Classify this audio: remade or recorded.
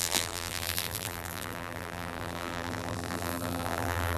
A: remade